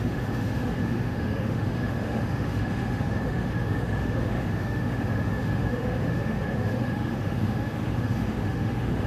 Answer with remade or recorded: remade